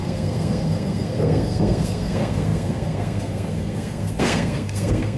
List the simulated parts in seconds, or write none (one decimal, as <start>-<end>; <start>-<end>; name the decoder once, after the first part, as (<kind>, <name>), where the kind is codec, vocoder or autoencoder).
0.0-5.2 (codec, SNAC)